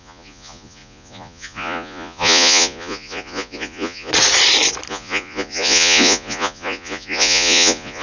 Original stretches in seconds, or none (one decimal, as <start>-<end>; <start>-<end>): 4.1-4.9